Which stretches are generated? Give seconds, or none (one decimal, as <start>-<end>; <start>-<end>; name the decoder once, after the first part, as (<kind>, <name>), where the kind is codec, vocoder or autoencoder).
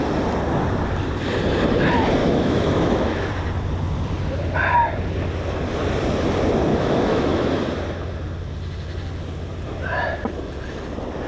2.2-3.3 (autoencoder, DAC-VAE); 6.7-7.5